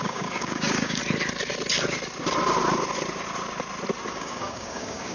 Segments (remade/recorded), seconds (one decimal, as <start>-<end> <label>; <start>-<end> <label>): 0.0-1.0 remade; 1.0-4.1 recorded; 4.1-5.1 remade